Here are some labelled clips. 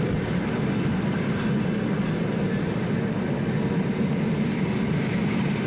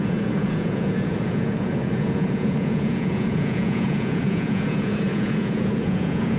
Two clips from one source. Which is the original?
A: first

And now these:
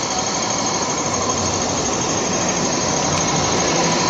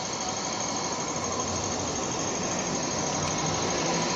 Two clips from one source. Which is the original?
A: second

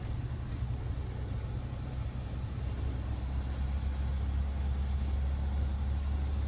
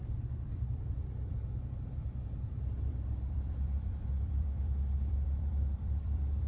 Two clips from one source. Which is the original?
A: first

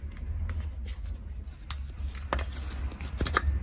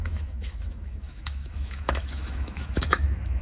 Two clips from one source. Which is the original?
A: first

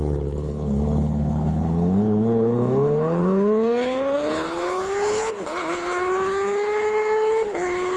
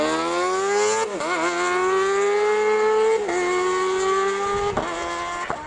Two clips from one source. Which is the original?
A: second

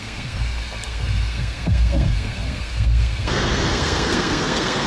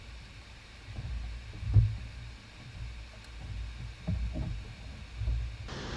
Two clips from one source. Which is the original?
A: second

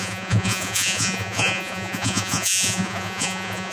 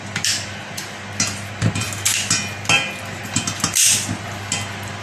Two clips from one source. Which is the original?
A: second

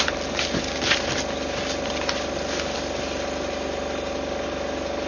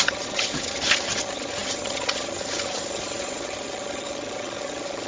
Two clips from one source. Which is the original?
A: first